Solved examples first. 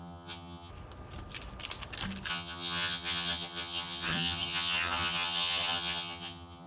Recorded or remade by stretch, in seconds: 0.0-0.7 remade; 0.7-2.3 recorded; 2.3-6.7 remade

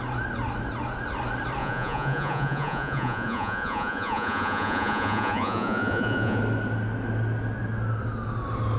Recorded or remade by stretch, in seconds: 0.0-1.6 recorded; 1.6-6.4 remade; 6.4-8.8 recorded

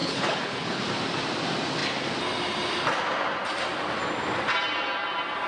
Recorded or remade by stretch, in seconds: 0.0-0.8 remade; 0.8-5.5 recorded

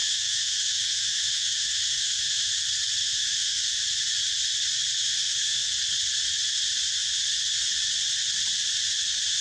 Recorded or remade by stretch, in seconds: 0.0-2.5 remade; 2.5-3.0 recorded; 3.0-3.8 remade; 3.8-5.0 recorded; 5.0-5.7 remade; 5.7-9.4 recorded